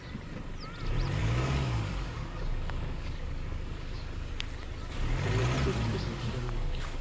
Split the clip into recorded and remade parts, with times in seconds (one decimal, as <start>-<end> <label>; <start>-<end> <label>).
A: 0.0-1.2 recorded; 1.2-4.3 remade; 4.3-5.9 recorded; 5.9-7.0 remade